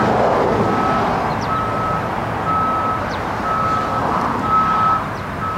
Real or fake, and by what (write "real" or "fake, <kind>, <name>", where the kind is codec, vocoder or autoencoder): real